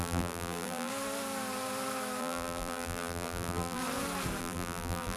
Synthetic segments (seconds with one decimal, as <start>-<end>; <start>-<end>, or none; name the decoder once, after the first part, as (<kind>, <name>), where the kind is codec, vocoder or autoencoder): 0.0-0.9 (vocoder, BigVGAN v2); 2.2-3.8; 4.4-5.2

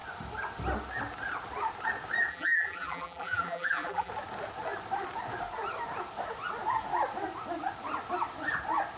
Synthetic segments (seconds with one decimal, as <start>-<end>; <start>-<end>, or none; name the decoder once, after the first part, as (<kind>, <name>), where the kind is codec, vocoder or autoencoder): 2.3-4.1 (vocoder, BigVGAN v2)

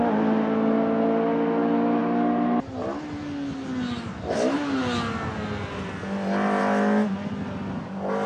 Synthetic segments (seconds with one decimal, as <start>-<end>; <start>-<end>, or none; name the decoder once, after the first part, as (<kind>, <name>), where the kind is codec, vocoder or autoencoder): none

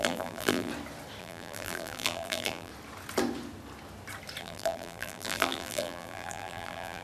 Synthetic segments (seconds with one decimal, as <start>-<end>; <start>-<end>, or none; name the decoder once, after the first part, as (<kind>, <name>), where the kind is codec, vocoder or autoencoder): 0.0-0.7 (vocoder, BigVGAN v2); 1.2-2.7; 4.4-7.0